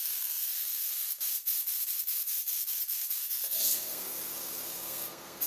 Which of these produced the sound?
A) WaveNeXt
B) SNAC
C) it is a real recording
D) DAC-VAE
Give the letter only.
B